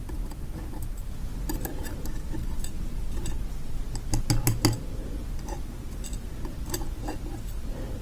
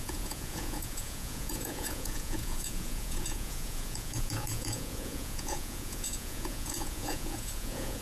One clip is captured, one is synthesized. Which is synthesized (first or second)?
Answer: second